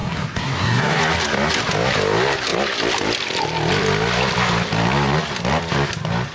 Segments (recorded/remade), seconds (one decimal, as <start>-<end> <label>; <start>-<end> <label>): 0.0-1.0 remade; 1.0-6.3 recorded